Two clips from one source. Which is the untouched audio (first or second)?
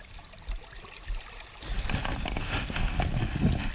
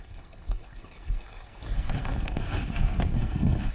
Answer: first